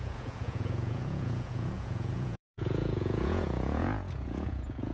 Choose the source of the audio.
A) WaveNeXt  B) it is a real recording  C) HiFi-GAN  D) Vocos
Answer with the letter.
D